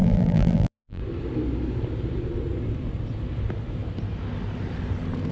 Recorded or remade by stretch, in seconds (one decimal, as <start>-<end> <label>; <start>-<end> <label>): 0.0-1.0 remade; 1.0-5.3 recorded